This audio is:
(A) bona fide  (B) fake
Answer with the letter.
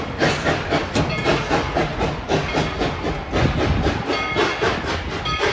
A